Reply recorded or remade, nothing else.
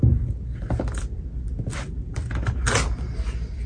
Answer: recorded